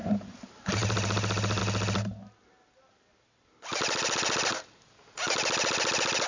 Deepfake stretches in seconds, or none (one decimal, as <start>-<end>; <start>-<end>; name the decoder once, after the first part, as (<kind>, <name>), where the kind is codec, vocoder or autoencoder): 0.0-1.6 (vocoder, BigVGAN v2)